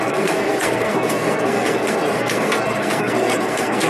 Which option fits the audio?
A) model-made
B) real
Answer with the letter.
A